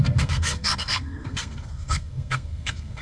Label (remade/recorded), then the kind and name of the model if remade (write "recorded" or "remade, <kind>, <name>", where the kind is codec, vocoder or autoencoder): remade, codec, SNAC